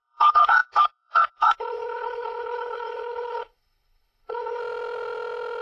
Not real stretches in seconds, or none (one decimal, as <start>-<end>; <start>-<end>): 0.0-4.6